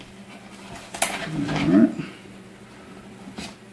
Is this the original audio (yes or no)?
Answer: yes